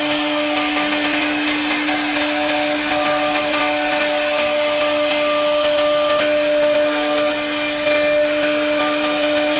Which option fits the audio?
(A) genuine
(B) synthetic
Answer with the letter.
A